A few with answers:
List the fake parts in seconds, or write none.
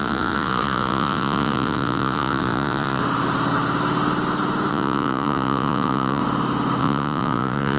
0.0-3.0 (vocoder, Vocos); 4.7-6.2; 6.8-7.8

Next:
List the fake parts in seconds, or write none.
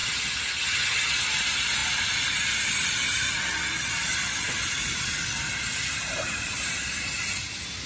0.0-1.1 (vocoder, HiFi-GAN)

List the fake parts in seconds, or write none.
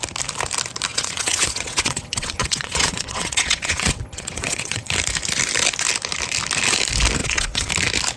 0.9-4.9 (vocoder, WaveNeXt); 7.2-7.7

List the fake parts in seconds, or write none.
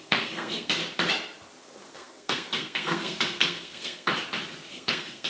0.0-0.8 (codec, SNAC); 1.6-4.1; 4.7-5.3